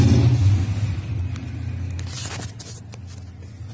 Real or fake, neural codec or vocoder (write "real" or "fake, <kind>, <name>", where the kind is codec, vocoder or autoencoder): real